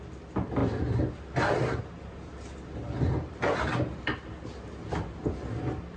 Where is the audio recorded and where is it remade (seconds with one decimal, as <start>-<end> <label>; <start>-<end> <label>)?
0.0-6.0 recorded